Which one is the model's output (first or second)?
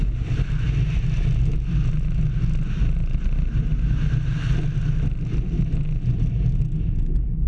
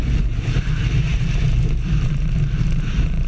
second